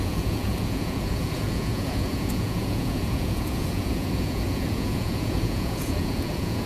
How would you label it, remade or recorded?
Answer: remade